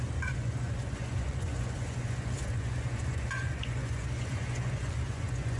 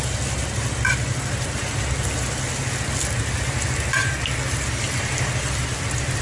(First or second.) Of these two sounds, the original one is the second